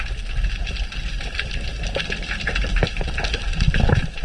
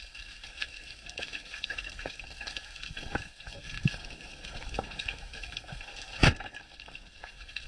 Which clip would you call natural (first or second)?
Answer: first